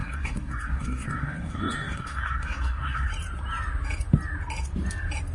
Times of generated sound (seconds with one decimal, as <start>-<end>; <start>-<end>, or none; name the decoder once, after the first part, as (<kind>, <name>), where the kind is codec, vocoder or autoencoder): 0.0-3.1 (codec, SNAC)